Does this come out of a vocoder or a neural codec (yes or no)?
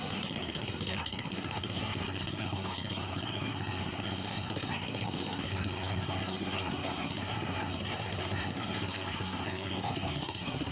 yes